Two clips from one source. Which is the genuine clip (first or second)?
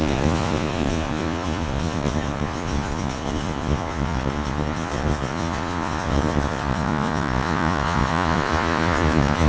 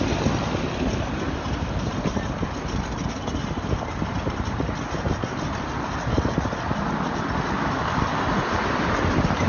second